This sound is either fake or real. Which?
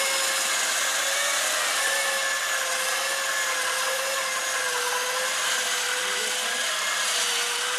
real